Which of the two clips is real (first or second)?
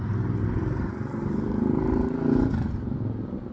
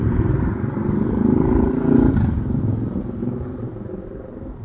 first